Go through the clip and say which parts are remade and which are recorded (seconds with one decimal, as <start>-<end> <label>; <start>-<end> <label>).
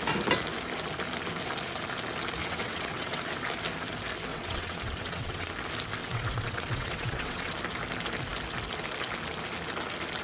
0.0-2.4 recorded; 2.4-3.3 remade; 3.3-4.3 recorded; 4.3-5.5 remade; 5.5-6.0 recorded; 6.0-7.5 remade; 7.5-10.2 recorded